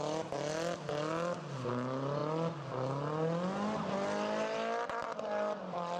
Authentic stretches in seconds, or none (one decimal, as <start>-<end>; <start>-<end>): 0.0-6.0